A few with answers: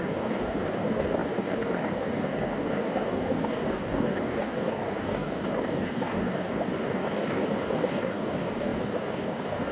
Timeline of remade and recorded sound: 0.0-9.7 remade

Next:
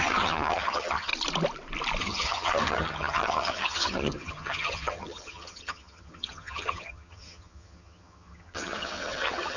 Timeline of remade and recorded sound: 0.0-1.1 remade; 1.1-2.0 recorded; 2.0-9.6 remade

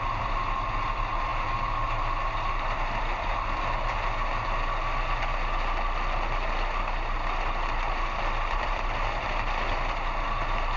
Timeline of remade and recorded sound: 0.0-10.8 recorded